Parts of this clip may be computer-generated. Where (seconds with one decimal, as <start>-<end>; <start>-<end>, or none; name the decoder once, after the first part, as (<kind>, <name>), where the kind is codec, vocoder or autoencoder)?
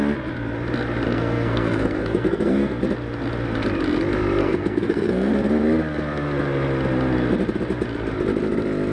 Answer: 1.1-2.8 (codec, SNAC); 4.4-5.3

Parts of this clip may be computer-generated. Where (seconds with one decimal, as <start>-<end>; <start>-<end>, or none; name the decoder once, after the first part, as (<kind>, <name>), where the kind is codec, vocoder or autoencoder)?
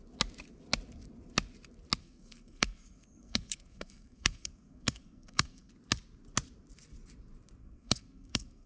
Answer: 2.0-5.7 (codec, SNAC); 7.6-8.7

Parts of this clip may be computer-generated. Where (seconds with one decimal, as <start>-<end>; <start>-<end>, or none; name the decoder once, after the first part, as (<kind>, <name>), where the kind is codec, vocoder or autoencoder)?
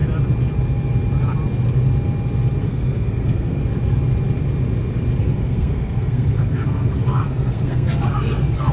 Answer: 2.6-3.6 (codec, SNAC); 5.2-8.7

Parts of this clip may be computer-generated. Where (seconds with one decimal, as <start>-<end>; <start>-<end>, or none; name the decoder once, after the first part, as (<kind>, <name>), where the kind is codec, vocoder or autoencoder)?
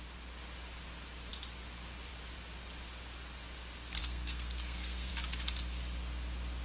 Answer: 4.0-5.1 (codec, SNAC)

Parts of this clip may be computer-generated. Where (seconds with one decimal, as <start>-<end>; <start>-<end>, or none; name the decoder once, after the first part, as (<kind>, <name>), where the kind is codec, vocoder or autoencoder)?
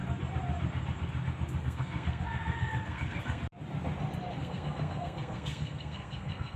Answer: 1.6-3.4 (codec, SNAC); 4.3-6.6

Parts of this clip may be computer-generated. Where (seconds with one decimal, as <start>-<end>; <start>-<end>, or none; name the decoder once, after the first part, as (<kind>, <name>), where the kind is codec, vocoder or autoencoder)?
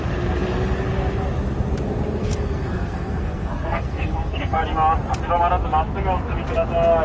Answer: 2.2-4.6 (codec, SNAC)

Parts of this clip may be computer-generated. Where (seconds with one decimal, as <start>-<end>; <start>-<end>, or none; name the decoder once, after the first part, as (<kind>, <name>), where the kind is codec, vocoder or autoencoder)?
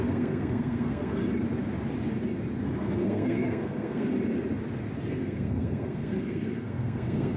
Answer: 0.0-1.2 (codec, SNAC); 3.0-4.1; 5.1-7.4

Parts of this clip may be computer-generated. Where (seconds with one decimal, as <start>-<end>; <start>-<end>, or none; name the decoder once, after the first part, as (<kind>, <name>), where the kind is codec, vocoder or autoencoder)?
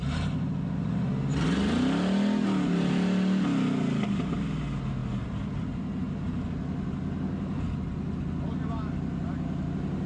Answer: none